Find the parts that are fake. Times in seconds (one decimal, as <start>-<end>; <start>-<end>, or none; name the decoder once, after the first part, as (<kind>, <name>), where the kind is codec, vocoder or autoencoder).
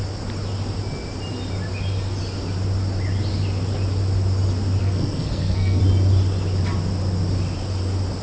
4.8-5.8 (codec, SNAC)